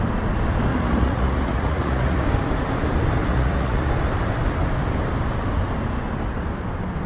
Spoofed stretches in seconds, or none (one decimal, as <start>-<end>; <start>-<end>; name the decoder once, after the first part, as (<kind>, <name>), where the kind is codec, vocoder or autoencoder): 0.7-2.2 (vocoder, Vocos); 3.3-3.9